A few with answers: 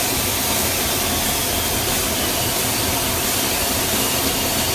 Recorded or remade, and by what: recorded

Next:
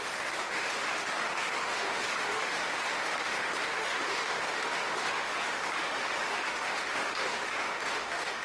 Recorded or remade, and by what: remade, autoencoder, DAC-VAE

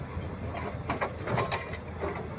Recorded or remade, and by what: recorded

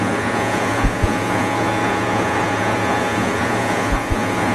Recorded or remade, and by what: remade, vocoder, Vocos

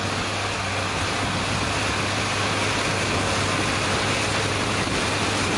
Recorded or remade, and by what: recorded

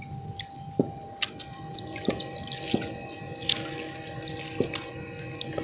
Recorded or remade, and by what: recorded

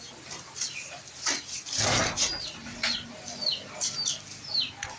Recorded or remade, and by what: recorded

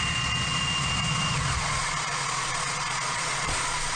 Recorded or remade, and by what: remade, vocoder, Vocos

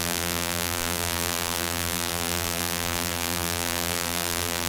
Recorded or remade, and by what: remade, vocoder, BigVGAN v2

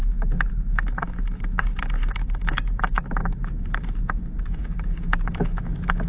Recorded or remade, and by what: remade, autoencoder, DAC-VAE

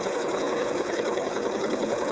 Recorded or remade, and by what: remade, codec, HILCodec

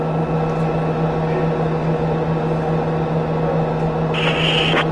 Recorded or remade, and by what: recorded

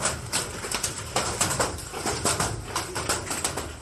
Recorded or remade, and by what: recorded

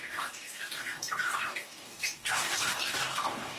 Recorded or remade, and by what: remade, codec, DAC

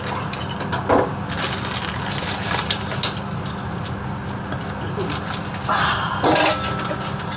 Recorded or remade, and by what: recorded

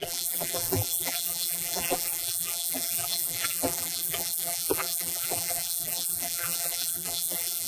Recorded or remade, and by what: remade, vocoder, BigVGAN v2